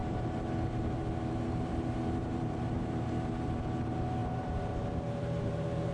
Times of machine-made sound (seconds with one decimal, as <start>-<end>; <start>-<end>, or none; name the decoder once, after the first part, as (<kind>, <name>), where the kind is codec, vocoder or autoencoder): 0.0-5.9 (vocoder, BigVGAN v2)